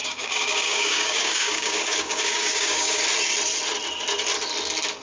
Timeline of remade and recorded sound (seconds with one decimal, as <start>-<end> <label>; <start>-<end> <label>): 0.0-3.0 remade; 3.0-5.0 recorded